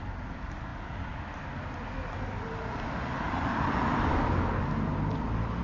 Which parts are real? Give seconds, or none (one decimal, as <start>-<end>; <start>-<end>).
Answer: 0.0-5.6